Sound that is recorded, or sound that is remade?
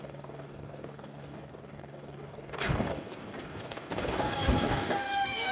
remade